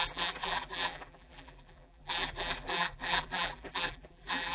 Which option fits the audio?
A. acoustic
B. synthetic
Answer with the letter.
B